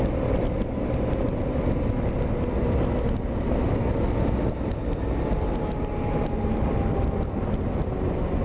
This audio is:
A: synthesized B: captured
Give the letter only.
B